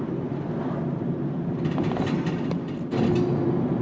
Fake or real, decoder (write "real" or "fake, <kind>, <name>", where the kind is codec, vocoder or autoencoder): real